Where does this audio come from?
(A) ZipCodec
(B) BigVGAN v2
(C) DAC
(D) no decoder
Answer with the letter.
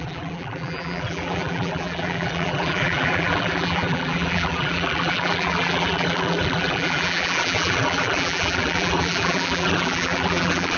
B